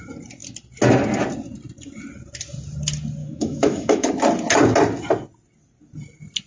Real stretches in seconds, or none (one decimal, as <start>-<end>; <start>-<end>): 0.0-3.2; 4.1-6.5